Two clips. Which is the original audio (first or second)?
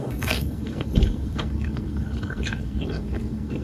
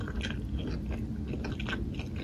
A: second